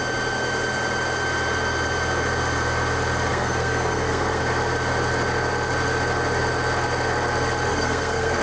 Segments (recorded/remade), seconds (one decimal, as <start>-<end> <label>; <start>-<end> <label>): 0.0-3.3 recorded; 3.3-4.4 remade; 4.4-7.7 recorded; 7.7-8.4 remade